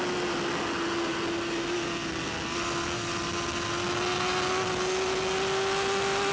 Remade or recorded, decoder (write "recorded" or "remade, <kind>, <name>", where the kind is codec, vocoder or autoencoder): recorded